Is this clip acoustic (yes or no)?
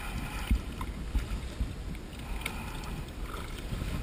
yes